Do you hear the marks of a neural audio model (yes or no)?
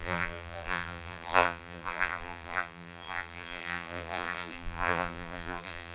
yes